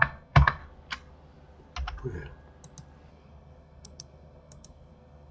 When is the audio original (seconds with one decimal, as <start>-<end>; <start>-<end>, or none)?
0.6-3.1